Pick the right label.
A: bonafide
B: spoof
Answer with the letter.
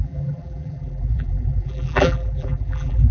B